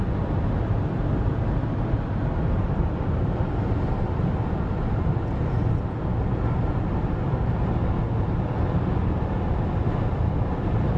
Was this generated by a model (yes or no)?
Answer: no